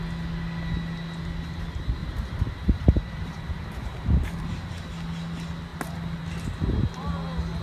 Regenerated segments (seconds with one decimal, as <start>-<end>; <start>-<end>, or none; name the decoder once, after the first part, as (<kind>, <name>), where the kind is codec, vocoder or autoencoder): 2.0-4.9 (vocoder, BigVGAN v2)